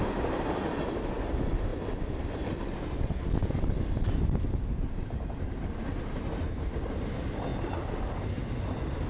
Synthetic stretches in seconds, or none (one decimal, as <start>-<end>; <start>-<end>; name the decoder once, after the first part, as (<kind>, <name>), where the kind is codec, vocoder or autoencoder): none